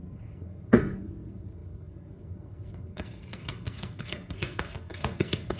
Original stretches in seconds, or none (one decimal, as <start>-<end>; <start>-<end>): none